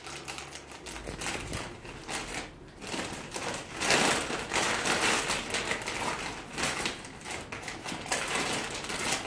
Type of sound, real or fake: real